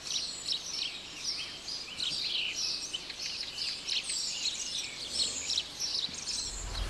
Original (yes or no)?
yes